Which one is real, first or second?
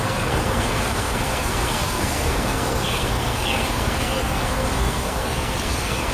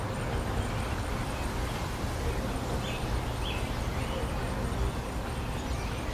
second